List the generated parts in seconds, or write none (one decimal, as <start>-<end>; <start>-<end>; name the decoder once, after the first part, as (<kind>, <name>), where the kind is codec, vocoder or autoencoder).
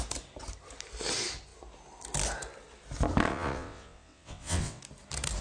3.3-4.8 (vocoder, WaveNeXt)